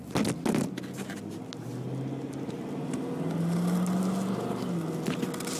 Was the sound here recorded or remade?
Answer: recorded